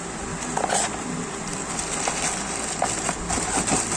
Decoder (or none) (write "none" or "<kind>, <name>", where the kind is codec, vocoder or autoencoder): none